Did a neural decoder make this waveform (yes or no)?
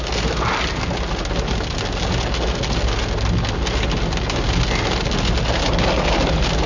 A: no